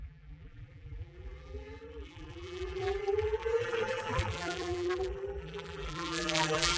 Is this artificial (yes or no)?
yes